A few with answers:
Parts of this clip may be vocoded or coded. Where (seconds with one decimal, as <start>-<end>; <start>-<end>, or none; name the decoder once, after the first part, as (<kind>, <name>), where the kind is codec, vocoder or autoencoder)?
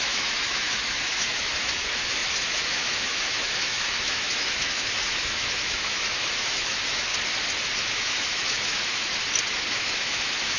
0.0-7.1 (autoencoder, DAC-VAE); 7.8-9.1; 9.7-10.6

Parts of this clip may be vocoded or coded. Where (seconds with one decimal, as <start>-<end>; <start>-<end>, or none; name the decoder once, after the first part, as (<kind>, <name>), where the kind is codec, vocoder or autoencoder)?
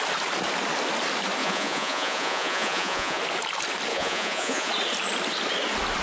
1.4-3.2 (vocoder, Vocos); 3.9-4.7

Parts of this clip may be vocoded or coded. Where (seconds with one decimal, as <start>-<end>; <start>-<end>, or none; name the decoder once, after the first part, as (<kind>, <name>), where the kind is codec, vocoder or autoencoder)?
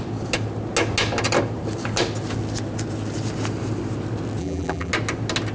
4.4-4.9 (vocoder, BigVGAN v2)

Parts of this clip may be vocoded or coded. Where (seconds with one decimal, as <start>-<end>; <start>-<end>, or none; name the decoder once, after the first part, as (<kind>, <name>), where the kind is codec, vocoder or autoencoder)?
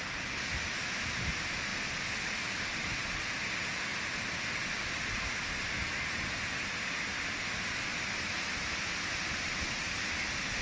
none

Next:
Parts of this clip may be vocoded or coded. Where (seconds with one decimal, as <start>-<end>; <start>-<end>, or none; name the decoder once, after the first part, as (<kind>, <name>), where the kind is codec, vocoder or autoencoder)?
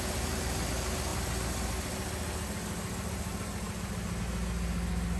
none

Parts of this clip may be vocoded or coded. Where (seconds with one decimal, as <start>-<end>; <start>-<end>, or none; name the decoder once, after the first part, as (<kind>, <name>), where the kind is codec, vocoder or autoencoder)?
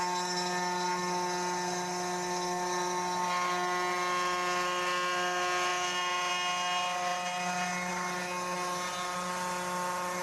none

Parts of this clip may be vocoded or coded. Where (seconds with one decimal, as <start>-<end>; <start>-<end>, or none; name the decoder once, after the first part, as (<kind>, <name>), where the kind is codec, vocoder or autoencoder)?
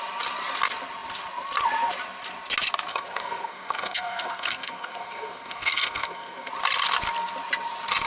2.9-6.5 (codec, SNAC)